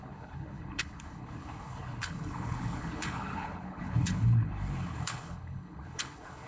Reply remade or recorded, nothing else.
remade